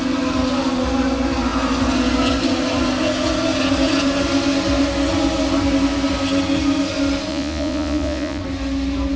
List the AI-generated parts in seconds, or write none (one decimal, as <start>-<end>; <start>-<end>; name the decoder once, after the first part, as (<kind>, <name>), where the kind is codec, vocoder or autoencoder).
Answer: 7.3-8.4 (vocoder, Vocos)